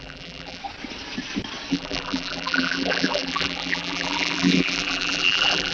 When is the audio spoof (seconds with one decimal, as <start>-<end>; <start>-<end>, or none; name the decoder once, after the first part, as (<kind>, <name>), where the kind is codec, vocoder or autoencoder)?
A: 0.0-0.6 (vocoder, BigVGAN v2); 1.7-5.7